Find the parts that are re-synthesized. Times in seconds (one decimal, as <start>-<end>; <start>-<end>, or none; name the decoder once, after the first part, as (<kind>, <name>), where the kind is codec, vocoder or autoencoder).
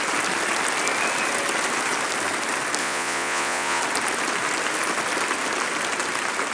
2.8-3.8 (vocoder, Vocos)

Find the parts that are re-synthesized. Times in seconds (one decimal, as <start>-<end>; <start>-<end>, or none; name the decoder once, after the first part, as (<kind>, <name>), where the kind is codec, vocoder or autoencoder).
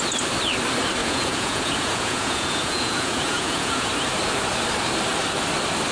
1.0-3.9 (vocoder, Vocos)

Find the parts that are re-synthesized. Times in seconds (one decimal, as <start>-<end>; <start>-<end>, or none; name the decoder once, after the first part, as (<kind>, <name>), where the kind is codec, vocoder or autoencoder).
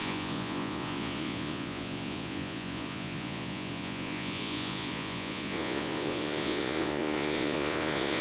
0.0-8.2 (vocoder, Vocos)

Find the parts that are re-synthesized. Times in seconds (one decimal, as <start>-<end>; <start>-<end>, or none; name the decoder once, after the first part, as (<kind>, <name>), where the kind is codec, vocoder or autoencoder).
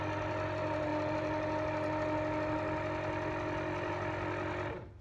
none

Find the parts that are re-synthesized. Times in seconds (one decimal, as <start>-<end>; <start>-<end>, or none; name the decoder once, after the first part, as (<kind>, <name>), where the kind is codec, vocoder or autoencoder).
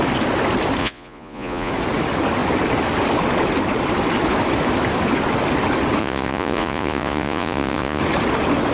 0.8-1.7 (vocoder, Vocos); 6.0-8.0